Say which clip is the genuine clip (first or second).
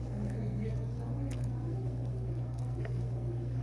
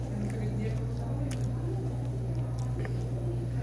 second